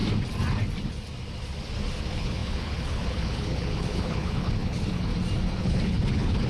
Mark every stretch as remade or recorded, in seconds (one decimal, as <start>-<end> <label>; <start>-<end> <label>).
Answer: 0.0-2.0 recorded; 2.0-5.1 remade; 5.1-5.6 recorded; 5.6-6.5 remade